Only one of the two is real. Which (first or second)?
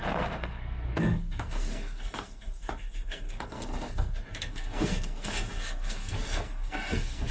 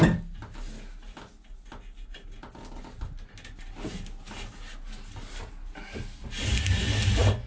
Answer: second